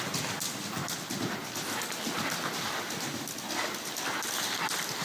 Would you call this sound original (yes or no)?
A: yes